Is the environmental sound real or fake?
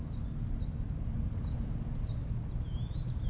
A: real